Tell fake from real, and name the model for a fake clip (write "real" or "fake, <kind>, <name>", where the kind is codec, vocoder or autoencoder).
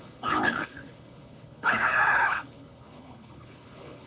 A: fake, codec, HILCodec